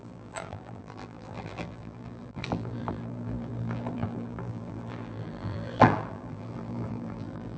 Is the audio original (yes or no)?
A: no